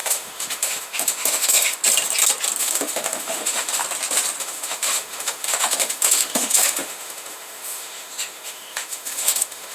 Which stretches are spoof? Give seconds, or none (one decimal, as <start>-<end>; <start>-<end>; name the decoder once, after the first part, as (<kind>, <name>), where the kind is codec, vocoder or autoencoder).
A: 0.0-1.8 (autoencoder, DAC-VAE); 2.6-3.8; 4.4-9.7